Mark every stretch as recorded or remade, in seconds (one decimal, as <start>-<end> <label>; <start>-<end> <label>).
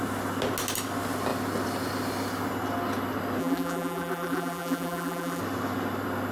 0.0-3.4 recorded; 3.4-5.4 remade; 5.4-6.3 recorded